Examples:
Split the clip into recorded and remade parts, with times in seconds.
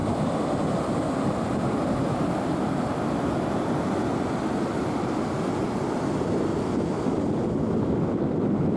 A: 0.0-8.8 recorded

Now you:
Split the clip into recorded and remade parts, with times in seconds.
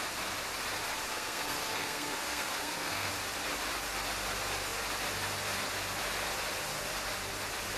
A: 0.0-1.1 recorded; 1.1-3.1 remade; 3.1-7.8 recorded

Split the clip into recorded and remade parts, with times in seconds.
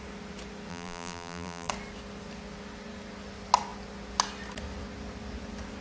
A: 0.0-0.7 recorded; 0.7-1.7 remade; 1.7-5.8 recorded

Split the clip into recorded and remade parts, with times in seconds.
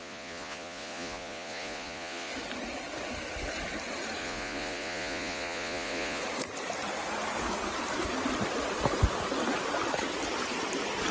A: 0.0-2.3 remade; 2.3-4.2 recorded; 4.2-6.2 remade; 6.2-11.1 recorded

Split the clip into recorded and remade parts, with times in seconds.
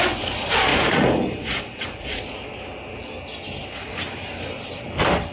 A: 0.0-0.7 recorded; 0.7-2.2 remade; 2.2-5.3 recorded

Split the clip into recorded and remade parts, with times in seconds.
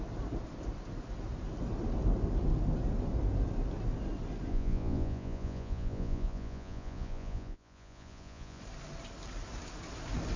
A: 0.0-4.5 recorded; 4.5-8.6 remade; 8.6-10.4 recorded